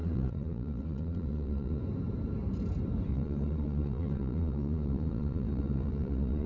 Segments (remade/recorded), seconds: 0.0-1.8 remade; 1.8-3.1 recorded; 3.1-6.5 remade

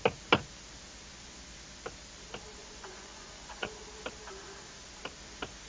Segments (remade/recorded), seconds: 0.0-2.6 recorded; 2.6-3.8 remade; 3.8-5.7 recorded

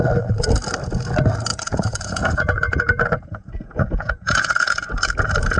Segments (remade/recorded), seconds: 0.0-1.5 recorded; 1.5-4.9 remade; 4.9-5.6 recorded

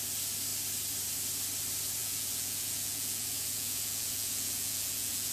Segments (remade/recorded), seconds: 0.0-2.0 recorded; 2.0-5.3 remade

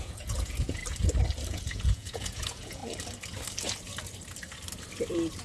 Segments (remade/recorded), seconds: 0.0-0.8 remade; 0.8-1.5 recorded; 1.5-2.8 remade; 2.8-5.4 recorded